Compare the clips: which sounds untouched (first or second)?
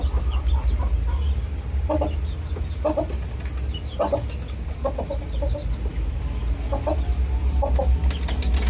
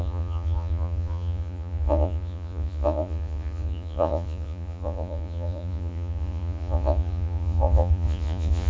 first